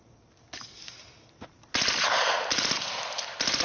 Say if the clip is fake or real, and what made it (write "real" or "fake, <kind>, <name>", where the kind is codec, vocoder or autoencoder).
real